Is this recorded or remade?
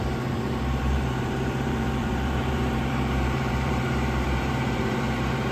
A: remade